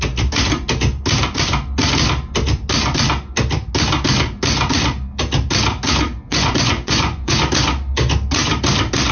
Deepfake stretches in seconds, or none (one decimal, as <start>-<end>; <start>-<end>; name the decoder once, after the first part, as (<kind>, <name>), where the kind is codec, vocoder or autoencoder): 6.3-7.4 (vocoder, Vocos)